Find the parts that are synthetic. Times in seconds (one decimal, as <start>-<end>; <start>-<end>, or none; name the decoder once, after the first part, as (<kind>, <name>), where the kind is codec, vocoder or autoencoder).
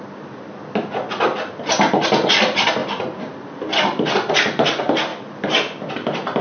none